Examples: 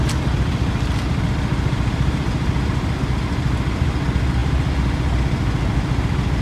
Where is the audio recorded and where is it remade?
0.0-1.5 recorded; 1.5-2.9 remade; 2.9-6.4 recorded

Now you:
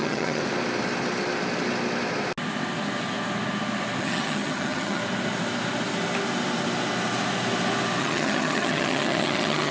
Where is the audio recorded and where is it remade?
0.0-0.4 remade; 0.4-4.0 recorded; 4.0-5.0 remade; 5.0-8.0 recorded; 8.0-9.7 remade

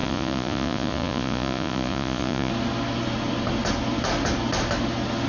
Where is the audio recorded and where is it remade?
0.0-2.5 remade; 2.5-5.3 recorded

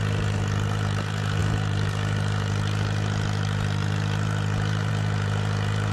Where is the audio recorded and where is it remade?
0.0-5.9 recorded

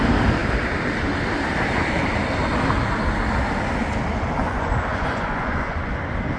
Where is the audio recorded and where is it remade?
0.0-4.4 recorded; 4.4-5.9 remade; 5.9-6.4 recorded

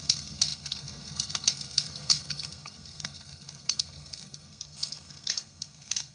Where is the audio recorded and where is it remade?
0.0-6.1 remade

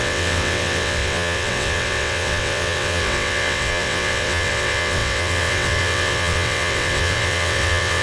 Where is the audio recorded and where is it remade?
0.0-8.0 remade